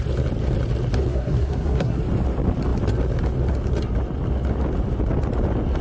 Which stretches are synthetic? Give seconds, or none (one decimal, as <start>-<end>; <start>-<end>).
1.1-2.0

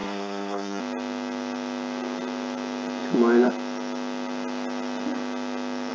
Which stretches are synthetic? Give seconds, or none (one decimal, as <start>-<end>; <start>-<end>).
0.0-0.8

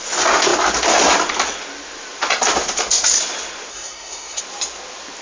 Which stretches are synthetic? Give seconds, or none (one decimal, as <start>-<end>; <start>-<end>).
3.7-4.4

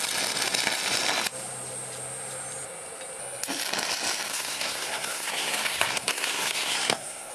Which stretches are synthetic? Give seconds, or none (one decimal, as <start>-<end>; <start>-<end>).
4.3-7.3

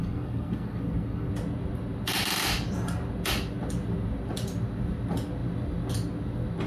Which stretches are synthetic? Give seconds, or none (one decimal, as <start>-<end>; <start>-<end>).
0.0-1.3

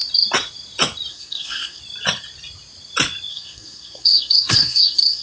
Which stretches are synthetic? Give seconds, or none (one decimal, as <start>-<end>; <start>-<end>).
1.1-1.8; 3.3-5.2

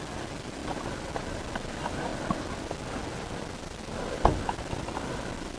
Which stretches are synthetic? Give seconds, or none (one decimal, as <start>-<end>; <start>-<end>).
none